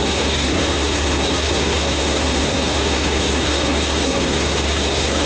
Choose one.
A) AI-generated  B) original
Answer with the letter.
A